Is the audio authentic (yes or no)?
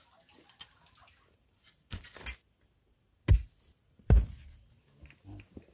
yes